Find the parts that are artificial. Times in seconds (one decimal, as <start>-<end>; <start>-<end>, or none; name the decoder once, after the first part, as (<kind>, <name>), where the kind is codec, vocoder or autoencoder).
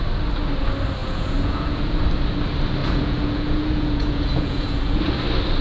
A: 1.0-2.0 (vocoder, Vocos); 2.8-5.1